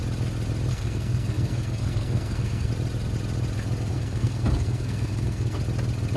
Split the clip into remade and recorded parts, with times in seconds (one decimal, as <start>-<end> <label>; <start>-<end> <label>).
0.0-0.7 recorded; 0.7-2.7 remade; 2.7-3.9 recorded; 3.9-5.6 remade; 5.6-6.2 recorded